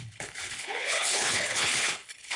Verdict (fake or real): fake